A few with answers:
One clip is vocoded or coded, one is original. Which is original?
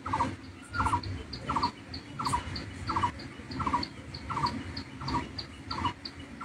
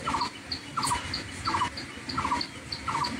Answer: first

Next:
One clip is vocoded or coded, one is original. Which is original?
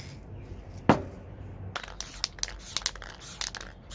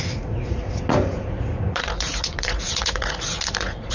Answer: first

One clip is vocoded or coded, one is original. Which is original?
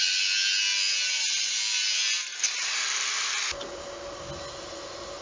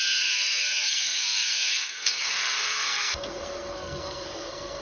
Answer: first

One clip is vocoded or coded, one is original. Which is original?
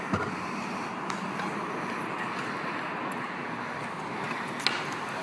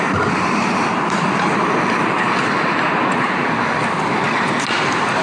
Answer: first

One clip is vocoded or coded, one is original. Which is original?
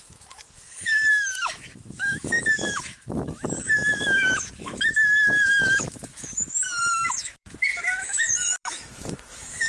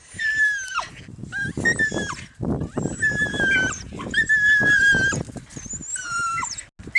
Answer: second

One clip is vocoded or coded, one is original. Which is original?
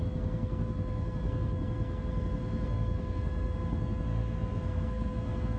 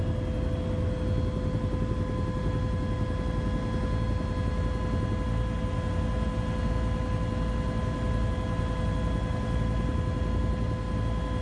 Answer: second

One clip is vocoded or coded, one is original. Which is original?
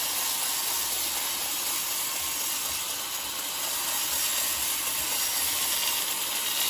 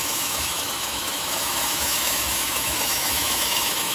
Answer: first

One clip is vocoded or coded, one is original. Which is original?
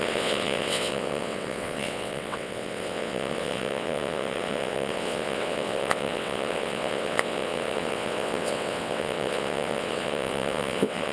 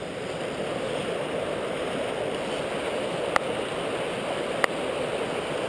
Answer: second